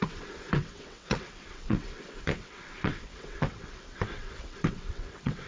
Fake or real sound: fake